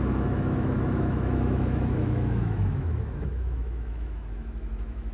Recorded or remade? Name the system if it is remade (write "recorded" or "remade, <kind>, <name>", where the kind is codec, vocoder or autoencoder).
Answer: remade, autoencoder, DAC-VAE